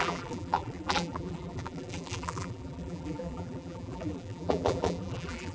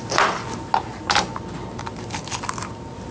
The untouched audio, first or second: second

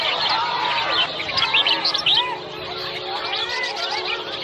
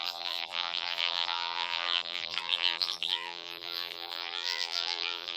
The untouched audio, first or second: first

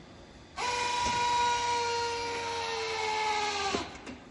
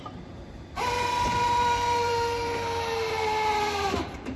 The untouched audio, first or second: first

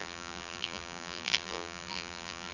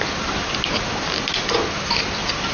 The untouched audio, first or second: second